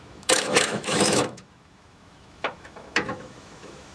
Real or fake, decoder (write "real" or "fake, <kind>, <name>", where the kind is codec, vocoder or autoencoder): fake, autoencoder, DAC-VAE